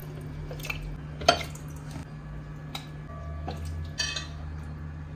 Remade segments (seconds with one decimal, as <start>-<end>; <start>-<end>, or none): none